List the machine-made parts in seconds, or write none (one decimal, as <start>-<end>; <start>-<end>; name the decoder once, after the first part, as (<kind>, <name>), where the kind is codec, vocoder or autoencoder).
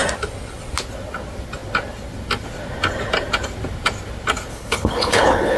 4.5-5.6 (codec, HILCodec)